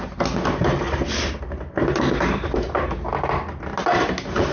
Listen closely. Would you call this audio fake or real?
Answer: real